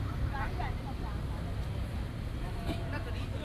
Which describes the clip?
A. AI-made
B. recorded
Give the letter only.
B